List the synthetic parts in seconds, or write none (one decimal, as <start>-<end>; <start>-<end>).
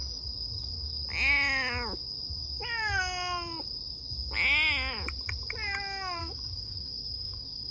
6.2-7.7